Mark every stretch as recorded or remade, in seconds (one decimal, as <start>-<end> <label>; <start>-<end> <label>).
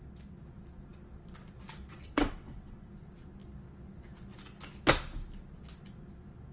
0.0-1.9 recorded; 1.9-2.9 remade; 2.9-6.5 recorded